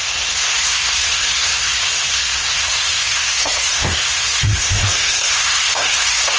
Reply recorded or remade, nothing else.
remade